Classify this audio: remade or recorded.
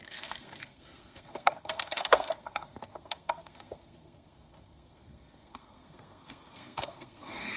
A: remade